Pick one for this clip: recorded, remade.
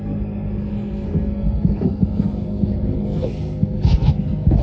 remade